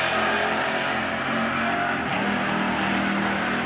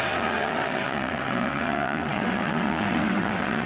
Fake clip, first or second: second